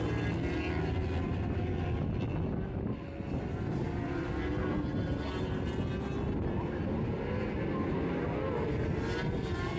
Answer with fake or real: real